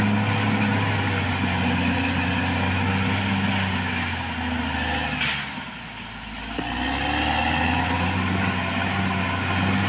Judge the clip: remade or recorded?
recorded